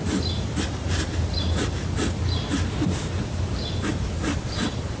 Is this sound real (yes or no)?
yes